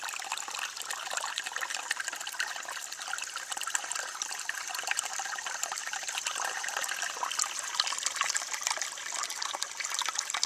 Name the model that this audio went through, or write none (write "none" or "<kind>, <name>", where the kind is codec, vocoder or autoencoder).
none